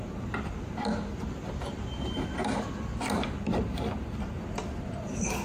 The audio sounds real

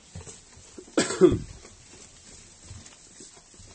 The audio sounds real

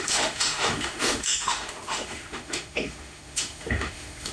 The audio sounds fake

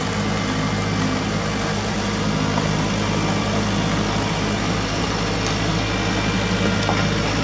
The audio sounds real